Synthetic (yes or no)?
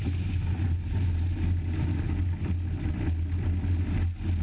no